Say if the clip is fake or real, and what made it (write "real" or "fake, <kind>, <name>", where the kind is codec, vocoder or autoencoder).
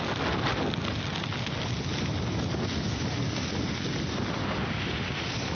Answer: real